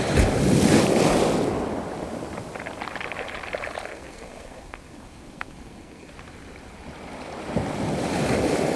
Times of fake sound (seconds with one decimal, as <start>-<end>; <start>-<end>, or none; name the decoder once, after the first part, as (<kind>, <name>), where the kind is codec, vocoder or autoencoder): 3.9-6.1 (codec, SNAC)